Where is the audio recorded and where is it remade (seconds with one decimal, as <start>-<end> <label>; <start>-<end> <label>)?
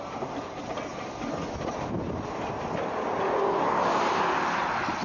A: 0.0-5.0 recorded